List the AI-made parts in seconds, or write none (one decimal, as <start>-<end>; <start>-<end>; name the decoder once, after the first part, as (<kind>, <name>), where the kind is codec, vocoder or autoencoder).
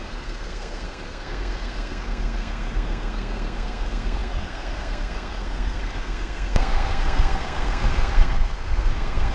0.0-9.3 (codec, SNAC)